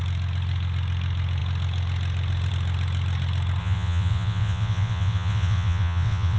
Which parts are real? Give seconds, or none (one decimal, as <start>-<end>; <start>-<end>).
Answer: 0.0-3.6